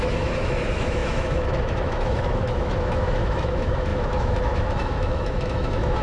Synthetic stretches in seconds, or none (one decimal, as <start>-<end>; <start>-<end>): 0.0-6.0

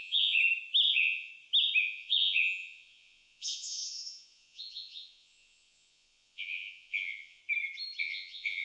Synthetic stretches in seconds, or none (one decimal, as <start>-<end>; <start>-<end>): 0.0-0.4; 0.9-1.3; 1.8-7.4; 8.0-8.6

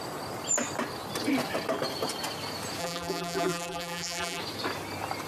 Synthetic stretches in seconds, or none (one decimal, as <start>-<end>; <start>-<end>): 2.8-4.4

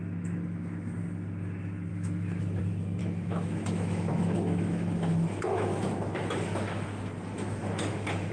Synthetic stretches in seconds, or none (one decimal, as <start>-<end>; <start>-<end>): 1.9-2.6; 3.0-8.3

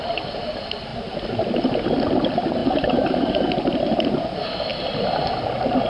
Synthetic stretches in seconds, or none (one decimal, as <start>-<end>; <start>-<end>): 2.6-3.4

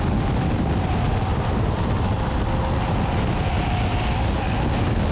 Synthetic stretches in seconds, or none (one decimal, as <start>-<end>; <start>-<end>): none

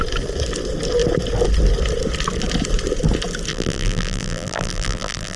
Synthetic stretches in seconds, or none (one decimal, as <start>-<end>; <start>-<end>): 3.5-5.4